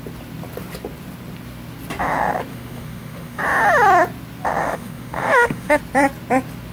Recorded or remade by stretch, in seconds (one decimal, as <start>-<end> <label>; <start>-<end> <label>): 0.0-2.5 recorded; 2.5-3.4 remade; 3.4-4.6 recorded; 4.6-5.8 remade; 5.8-6.7 recorded

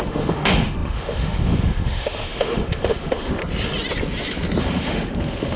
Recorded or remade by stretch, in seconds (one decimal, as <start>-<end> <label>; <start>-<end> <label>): 0.0-3.4 remade; 3.4-4.6 recorded; 4.6-5.6 remade

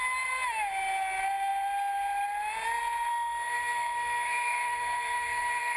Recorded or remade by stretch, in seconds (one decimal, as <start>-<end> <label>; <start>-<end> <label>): 0.0-3.1 recorded; 3.1-5.8 remade

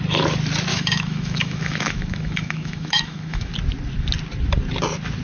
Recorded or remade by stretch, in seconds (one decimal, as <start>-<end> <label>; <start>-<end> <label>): 0.0-0.7 recorded; 0.7-3.5 remade; 3.5-5.2 recorded

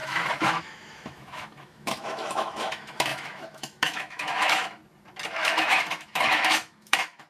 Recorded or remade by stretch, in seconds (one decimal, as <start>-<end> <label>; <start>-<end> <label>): 0.0-4.8 remade; 4.8-5.3 recorded; 5.3-7.3 remade